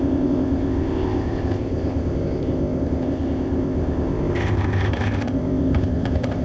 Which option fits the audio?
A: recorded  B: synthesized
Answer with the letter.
B